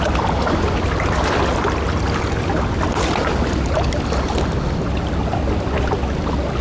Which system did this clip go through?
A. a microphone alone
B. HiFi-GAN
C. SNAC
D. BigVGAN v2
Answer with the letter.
A